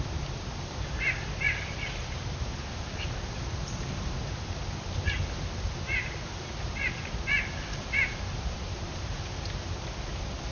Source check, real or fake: real